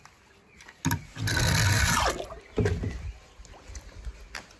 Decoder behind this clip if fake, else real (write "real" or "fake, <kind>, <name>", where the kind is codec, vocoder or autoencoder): real